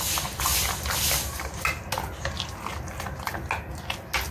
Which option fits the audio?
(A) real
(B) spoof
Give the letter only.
A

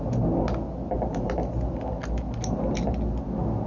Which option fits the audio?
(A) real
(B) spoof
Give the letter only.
A